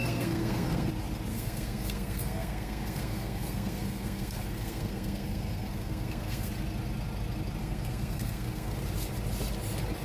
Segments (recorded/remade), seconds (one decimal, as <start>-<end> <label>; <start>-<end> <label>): 0.0-0.9 remade; 0.9-1.3 recorded; 1.3-6.5 remade; 6.5-7.6 recorded; 7.6-8.8 remade; 8.8-10.0 recorded